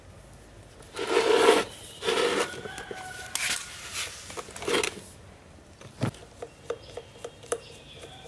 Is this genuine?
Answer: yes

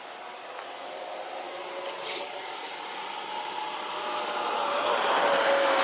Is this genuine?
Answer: yes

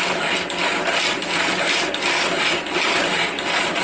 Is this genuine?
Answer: yes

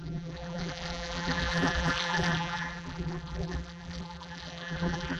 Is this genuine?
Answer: no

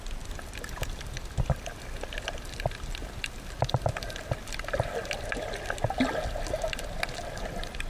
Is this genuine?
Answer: yes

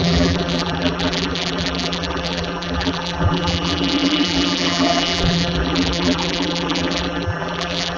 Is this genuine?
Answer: no